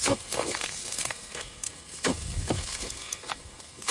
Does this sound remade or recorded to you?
remade